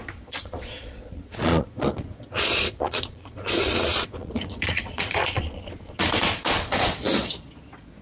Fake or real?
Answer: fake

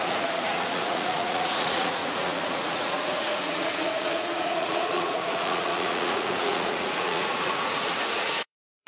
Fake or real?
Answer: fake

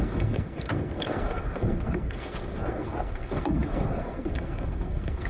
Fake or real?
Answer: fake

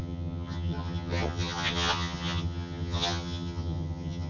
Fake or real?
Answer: fake